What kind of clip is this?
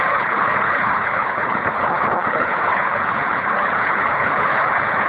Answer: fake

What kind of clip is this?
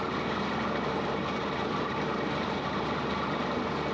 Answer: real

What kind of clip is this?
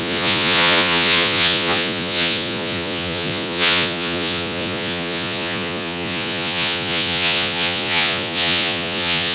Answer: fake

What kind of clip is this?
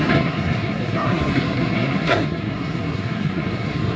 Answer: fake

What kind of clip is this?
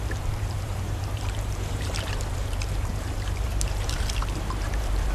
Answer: fake